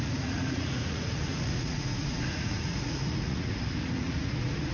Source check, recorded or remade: remade